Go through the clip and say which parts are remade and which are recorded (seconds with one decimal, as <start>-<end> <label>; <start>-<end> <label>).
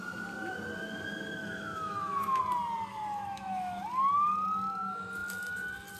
0.0-1.4 recorded; 1.4-2.4 remade; 2.4-2.9 recorded; 2.9-3.8 remade; 3.8-6.0 recorded